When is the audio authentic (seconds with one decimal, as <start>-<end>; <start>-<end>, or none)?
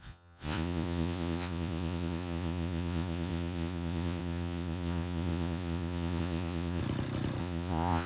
6.8-7.4